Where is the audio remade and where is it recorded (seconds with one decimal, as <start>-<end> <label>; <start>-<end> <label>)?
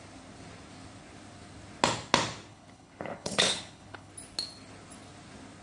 0.0-2.5 recorded; 2.5-4.1 remade; 4.1-5.6 recorded